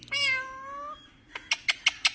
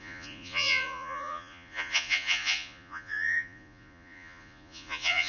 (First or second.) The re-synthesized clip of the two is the second